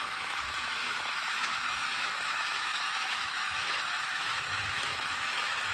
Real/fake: fake